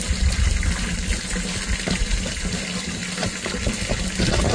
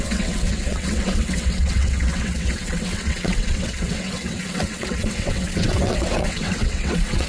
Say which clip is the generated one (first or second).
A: second